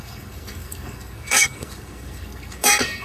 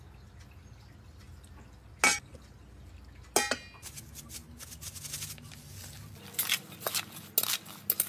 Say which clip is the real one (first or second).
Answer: second